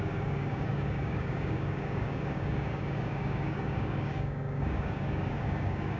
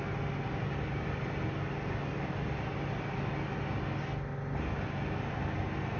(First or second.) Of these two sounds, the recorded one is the second